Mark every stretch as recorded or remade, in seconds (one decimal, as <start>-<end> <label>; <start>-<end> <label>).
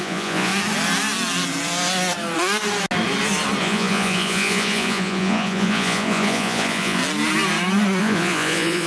0.0-0.5 remade; 0.5-3.6 recorded; 3.6-7.0 remade; 7.0-8.0 recorded; 8.0-8.9 remade